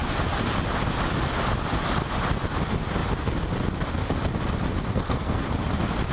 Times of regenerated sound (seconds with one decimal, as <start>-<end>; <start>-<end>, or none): 4.9-5.4